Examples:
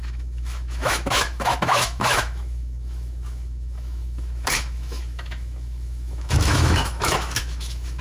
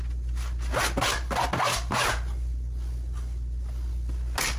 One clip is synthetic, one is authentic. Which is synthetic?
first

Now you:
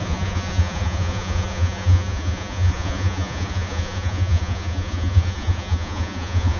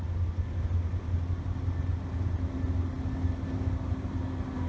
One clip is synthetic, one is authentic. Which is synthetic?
first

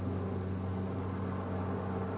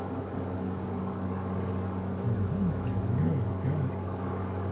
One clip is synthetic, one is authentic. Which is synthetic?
second